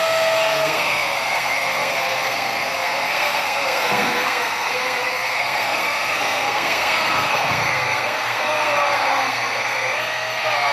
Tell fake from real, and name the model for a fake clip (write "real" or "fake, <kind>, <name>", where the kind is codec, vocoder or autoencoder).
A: fake, codec, SNAC